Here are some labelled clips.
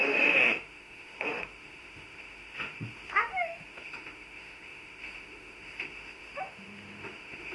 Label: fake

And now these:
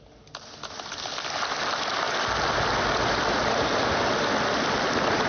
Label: real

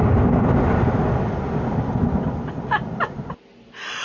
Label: real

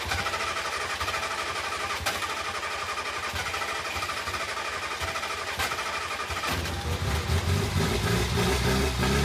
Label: real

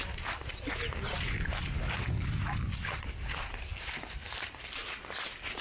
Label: real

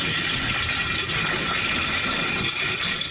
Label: real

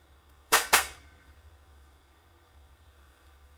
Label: fake